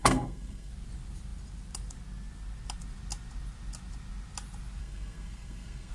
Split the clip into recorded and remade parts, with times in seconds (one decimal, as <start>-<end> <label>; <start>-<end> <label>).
0.0-0.7 remade; 0.7-4.8 recorded; 4.8-5.9 remade